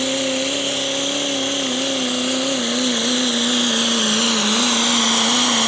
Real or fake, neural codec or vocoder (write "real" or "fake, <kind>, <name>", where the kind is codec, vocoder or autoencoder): real